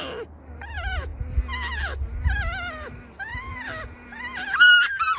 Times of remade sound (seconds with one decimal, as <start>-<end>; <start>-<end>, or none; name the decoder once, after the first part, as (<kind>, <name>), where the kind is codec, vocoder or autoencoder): none